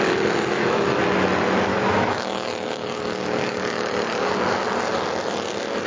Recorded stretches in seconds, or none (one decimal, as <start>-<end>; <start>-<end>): 0.0-0.5; 1.0-1.7; 4.3-5.9